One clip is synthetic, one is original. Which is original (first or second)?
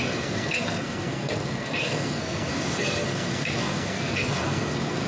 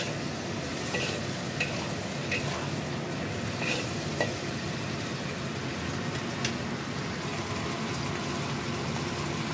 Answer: second